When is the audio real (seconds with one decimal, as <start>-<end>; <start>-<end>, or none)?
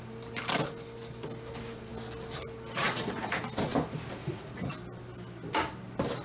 0.0-2.8; 3.4-4.2; 4.7-6.2